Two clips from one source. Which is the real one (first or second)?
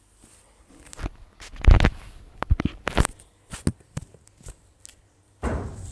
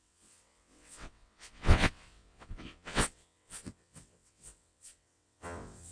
first